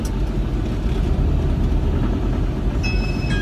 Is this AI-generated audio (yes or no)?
no